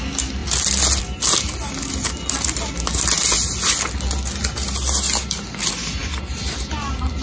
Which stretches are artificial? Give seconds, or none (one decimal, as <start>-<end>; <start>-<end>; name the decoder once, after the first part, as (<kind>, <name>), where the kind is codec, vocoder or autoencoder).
none